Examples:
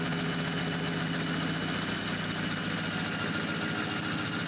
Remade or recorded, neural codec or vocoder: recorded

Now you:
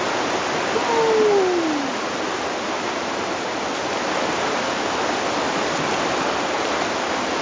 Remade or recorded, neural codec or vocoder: recorded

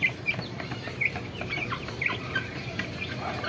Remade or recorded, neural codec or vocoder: remade, vocoder, BigVGAN v2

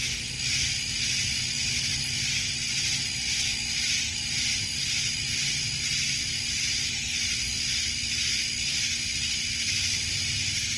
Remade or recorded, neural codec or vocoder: recorded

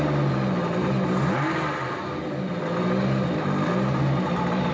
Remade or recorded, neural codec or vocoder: recorded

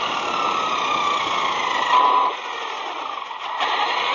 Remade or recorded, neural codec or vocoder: recorded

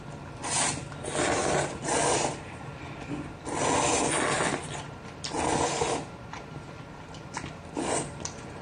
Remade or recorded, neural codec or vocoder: recorded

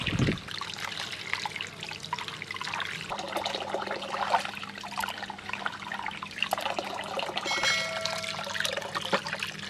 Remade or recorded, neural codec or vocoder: recorded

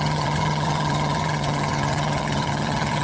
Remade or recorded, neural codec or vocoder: remade, vocoder, HiFi-GAN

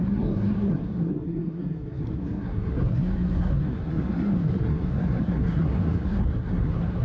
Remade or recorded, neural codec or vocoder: remade, codec, SNAC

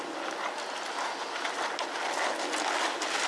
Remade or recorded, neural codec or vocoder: recorded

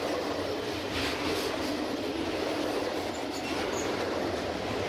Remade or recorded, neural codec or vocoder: recorded